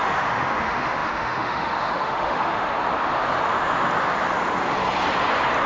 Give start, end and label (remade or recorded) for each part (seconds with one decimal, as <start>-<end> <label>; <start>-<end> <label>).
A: 0.0-2.7 remade; 2.7-5.7 recorded